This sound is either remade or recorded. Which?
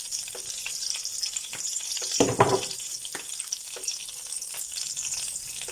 recorded